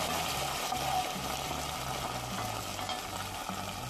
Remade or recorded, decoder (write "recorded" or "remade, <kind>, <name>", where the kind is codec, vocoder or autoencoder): recorded